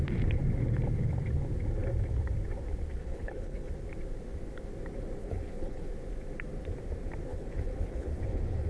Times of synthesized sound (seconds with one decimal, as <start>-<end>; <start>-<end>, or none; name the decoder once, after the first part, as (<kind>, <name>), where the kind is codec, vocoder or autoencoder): 3.0-3.7 (codec, HILCodec); 5.2-5.9; 7.3-8.7